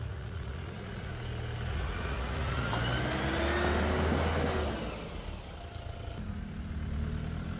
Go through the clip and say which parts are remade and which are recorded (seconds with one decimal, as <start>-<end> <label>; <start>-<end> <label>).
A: 0.0-1.1 remade; 1.1-1.7 recorded; 1.7-2.7 remade; 2.7-7.6 recorded